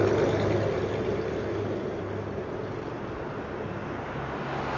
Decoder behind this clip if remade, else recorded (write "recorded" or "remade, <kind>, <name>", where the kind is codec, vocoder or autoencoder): recorded